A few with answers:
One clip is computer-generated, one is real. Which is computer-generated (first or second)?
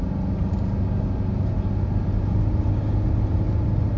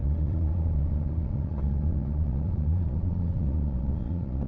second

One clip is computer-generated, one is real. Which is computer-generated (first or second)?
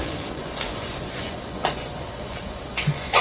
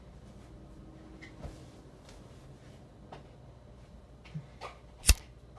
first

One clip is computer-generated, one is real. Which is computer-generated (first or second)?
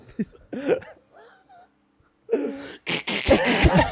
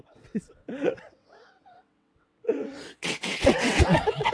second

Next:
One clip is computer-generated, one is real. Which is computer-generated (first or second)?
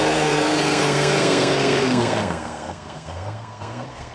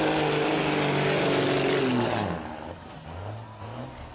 first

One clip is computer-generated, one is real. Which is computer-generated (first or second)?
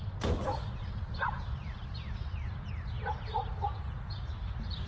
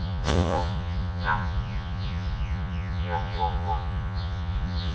second